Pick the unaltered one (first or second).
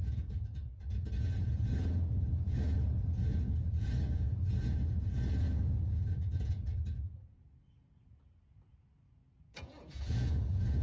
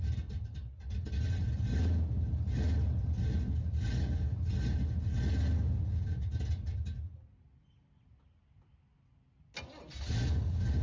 second